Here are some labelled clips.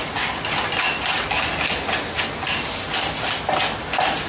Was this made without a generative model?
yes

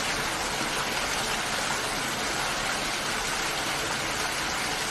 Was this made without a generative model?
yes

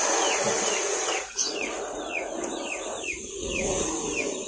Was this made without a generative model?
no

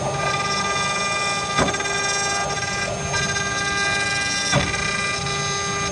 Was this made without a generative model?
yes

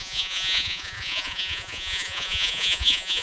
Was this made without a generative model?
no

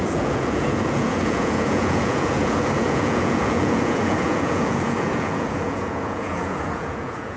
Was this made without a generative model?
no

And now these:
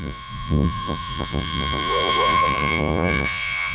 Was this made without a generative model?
no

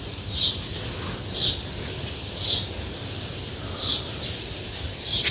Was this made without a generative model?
yes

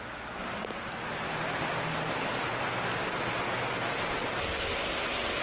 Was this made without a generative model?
yes